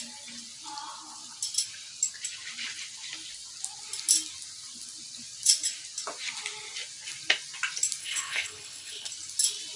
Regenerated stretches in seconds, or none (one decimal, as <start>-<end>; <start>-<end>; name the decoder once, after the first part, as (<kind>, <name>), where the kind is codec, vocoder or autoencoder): 8.0-9.1 (codec, HILCodec)